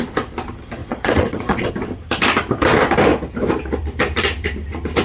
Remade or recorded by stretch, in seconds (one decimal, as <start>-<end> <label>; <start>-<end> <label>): 0.0-0.8 recorded; 0.8-1.7 remade; 1.7-5.0 recorded